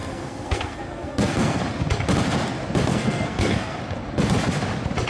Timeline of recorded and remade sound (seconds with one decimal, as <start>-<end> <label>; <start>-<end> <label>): 0.0-1.6 remade; 1.6-2.9 recorded; 2.9-3.8 remade; 3.8-5.1 recorded